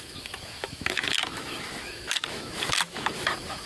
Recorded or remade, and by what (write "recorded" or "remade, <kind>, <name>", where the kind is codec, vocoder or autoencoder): remade, autoencoder, DAC-VAE